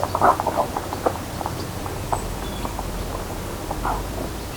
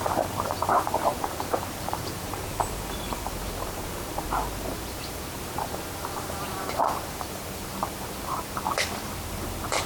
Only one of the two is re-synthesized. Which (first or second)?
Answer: second